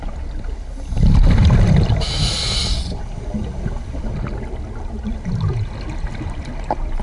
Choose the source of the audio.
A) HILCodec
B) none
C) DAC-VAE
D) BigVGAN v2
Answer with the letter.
B